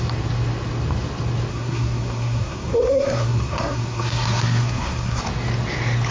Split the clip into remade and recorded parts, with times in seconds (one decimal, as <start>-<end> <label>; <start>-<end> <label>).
0.0-1.5 recorded; 1.5-5.2 remade; 5.2-6.1 recorded